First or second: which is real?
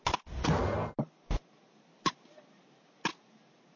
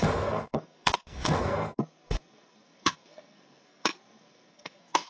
first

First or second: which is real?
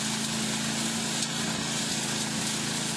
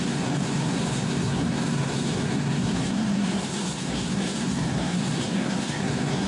first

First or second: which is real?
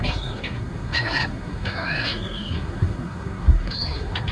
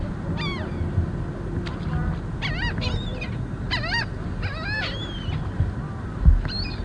second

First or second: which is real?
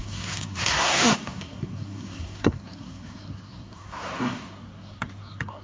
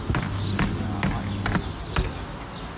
second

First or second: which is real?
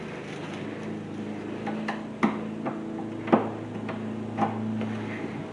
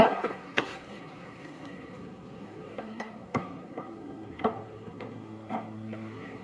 first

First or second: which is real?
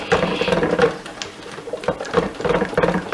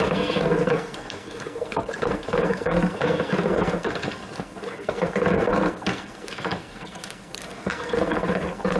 first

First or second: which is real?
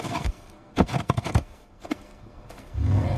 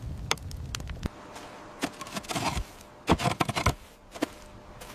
second